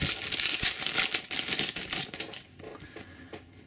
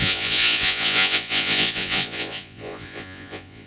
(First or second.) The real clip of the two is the first